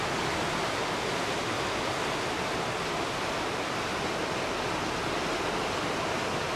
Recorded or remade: recorded